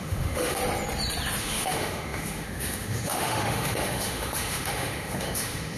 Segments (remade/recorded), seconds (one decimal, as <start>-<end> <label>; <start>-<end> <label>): 0.0-0.6 remade; 0.6-1.4 recorded; 1.4-5.8 remade